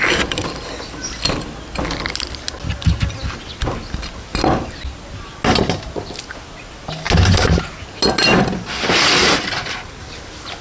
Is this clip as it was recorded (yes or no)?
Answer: yes